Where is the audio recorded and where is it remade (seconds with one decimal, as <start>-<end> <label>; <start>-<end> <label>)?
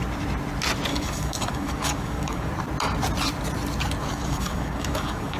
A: 0.0-0.9 recorded; 0.9-2.5 remade; 2.5-4.0 recorded; 4.0-5.4 remade